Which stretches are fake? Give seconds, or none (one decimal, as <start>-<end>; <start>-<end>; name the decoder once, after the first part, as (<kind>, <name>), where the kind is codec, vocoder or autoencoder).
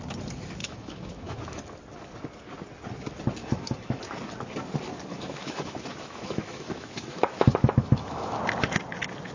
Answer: 0.6-1.6 (autoencoder, DAC-VAE); 3.4-4.0; 5.1-8.4